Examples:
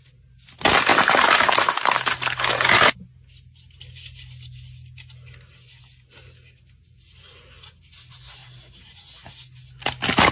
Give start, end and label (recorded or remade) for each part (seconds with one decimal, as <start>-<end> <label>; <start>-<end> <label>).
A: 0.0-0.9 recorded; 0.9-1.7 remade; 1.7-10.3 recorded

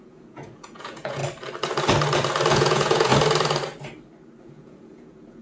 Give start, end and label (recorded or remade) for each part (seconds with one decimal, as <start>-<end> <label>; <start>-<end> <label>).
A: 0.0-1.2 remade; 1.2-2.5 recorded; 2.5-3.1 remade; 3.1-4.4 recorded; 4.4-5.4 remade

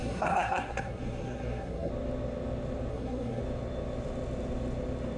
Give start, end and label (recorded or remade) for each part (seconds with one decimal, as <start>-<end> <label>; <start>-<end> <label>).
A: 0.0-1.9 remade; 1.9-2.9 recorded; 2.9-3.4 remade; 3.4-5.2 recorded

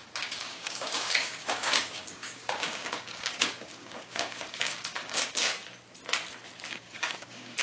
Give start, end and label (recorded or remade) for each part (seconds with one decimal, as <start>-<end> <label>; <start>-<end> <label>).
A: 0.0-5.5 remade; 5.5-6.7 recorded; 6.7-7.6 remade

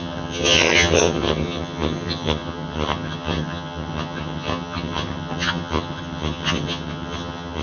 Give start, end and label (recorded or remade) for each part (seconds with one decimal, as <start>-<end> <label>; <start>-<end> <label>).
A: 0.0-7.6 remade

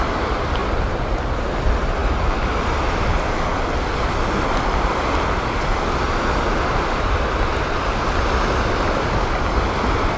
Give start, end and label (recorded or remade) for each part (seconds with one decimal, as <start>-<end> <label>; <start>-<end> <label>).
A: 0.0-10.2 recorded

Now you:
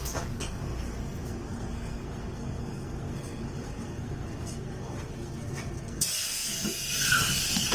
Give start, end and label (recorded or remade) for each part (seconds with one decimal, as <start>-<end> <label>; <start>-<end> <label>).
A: 0.0-7.7 remade

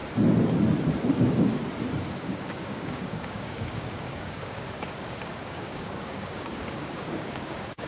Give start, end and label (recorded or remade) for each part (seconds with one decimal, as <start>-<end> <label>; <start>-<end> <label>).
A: 0.0-1.1 recorded; 1.1-1.5 remade; 1.5-2.1 recorded; 2.1-7.9 remade